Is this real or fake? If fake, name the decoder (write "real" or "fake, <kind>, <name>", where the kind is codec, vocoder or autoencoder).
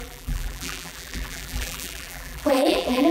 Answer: fake, vocoder, BigVGAN v2